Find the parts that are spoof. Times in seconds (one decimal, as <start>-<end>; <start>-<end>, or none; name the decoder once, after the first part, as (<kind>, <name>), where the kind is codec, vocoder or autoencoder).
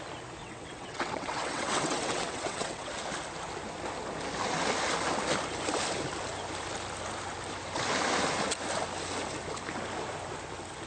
0.4-2.9 (vocoder, WaveNeXt)